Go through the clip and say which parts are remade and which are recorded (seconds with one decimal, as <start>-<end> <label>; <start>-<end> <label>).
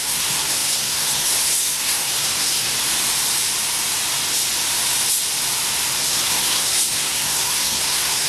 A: 0.0-2.7 remade; 2.7-6.1 recorded; 6.1-8.3 remade